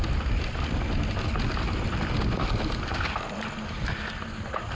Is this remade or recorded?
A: recorded